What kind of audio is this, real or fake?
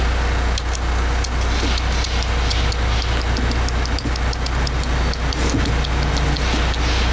real